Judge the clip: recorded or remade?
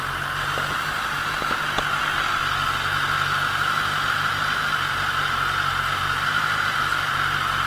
recorded